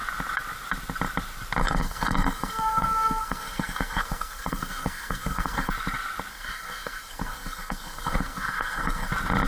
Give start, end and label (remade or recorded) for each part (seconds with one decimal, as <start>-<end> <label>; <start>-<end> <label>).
0.0-1.6 recorded; 1.6-5.7 remade; 5.7-6.3 recorded; 6.3-9.1 remade; 9.1-9.5 recorded